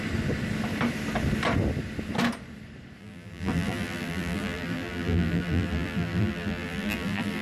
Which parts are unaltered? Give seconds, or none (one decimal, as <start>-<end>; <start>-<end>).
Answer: 0.0-3.0